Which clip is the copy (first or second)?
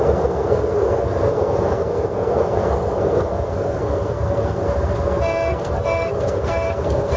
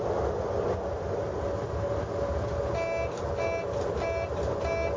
first